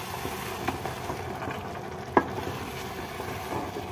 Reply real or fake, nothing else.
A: real